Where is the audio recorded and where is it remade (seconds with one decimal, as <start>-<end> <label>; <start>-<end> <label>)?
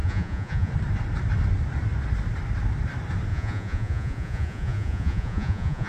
0.0-0.7 remade; 0.7-3.3 recorded; 3.3-5.9 remade